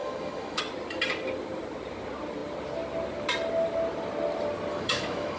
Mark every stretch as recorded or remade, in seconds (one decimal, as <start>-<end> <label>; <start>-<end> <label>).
0.0-0.6 remade; 0.6-4.7 recorded; 4.7-5.4 remade